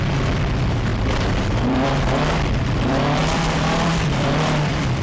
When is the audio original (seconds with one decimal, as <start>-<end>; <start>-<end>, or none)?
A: none